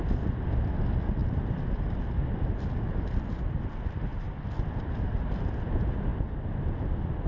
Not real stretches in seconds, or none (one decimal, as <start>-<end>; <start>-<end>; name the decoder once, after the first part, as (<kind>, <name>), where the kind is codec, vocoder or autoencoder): none